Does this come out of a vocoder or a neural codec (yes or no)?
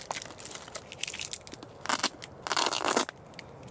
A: no